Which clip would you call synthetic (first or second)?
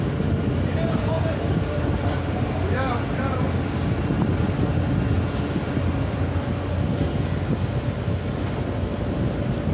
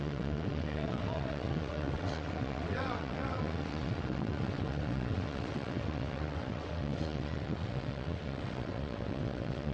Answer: second